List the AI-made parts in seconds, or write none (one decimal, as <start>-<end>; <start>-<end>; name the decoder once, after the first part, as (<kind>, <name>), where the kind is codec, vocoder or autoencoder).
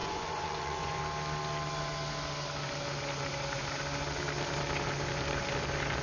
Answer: 0.0-1.0 (vocoder, Vocos)